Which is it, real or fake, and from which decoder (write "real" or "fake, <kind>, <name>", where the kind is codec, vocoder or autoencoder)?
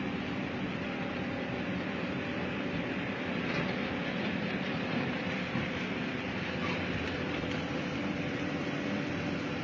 fake, vocoder, BigVGAN v2